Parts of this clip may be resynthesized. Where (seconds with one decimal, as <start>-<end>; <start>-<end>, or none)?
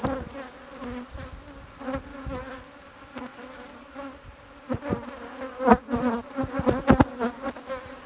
2.1-2.6